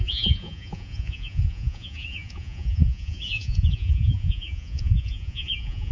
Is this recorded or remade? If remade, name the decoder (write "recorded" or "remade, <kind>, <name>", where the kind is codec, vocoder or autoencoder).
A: remade, vocoder, Vocos